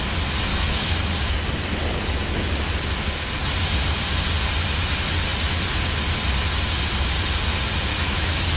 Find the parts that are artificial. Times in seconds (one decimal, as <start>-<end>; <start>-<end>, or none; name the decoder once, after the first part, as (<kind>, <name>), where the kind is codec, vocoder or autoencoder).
0.5-1.0 (autoencoder, DAC-VAE); 7.9-8.6